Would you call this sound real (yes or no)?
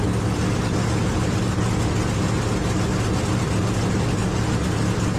yes